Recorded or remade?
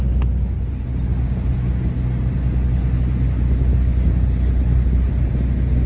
recorded